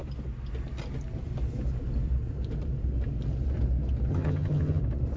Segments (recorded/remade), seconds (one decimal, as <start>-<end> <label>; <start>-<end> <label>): 0.0-4.1 recorded; 4.1-4.8 remade; 4.8-5.2 recorded